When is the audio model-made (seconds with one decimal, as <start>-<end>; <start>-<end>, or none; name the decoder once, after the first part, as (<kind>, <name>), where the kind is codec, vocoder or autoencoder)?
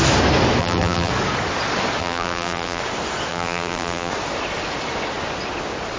0.6-1.1 (vocoder, BigVGAN v2); 2.0-2.8; 3.3-4.1